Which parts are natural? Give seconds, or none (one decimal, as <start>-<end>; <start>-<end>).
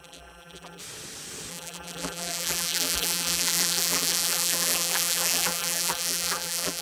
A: 0.8-1.5